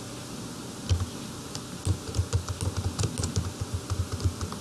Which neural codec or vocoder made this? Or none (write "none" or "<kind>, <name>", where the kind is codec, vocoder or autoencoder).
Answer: none